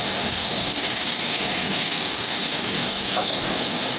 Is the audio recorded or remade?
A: remade